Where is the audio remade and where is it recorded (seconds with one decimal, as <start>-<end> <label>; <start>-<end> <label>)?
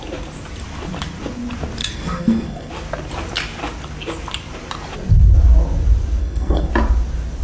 0.0-1.8 recorded; 1.8-2.7 remade; 2.7-6.2 recorded; 6.2-6.7 remade; 6.7-7.4 recorded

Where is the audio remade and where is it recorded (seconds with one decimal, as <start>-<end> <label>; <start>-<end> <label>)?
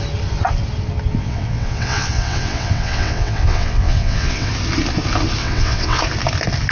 0.0-1.2 recorded; 1.2-4.5 remade; 4.5-5.4 recorded; 5.4-6.0 remade; 6.0-6.7 recorded